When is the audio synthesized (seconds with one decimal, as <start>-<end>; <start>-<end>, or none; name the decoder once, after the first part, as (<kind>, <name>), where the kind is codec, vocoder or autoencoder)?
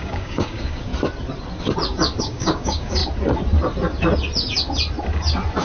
0.0-0.9 (codec, DAC); 2.2-3.0